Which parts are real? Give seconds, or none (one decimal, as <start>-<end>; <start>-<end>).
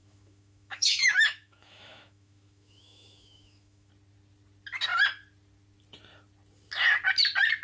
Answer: 3.9-7.6